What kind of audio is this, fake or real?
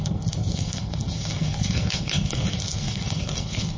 fake